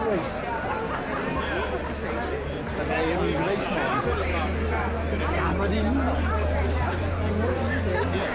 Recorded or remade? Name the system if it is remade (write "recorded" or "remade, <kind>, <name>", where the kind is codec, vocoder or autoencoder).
recorded